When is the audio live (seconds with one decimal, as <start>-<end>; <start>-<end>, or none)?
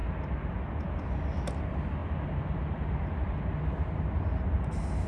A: 0.0-5.1